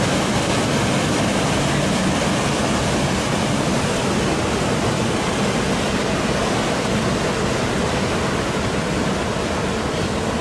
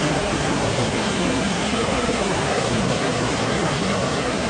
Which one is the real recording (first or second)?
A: first